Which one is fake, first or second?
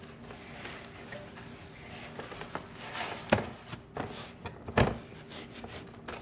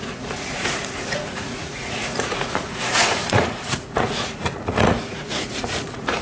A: second